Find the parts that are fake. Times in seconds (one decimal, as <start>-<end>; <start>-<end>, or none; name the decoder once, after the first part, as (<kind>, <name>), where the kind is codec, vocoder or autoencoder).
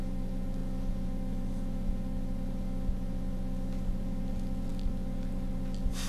none